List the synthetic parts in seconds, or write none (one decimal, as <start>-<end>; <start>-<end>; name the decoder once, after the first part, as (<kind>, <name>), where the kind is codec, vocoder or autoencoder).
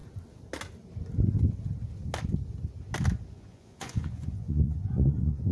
3.3-5.5 (vocoder, Vocos)